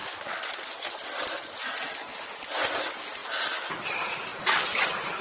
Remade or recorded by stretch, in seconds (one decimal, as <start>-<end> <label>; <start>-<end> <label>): 0.0-4.3 recorded; 4.3-5.2 remade